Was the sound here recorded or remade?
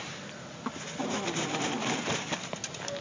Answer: recorded